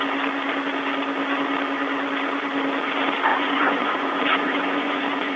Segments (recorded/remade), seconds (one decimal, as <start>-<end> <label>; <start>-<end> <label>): 0.0-3.3 recorded; 3.3-5.4 remade